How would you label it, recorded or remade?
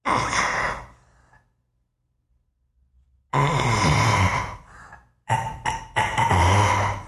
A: recorded